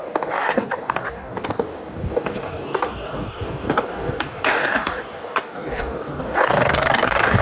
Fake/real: fake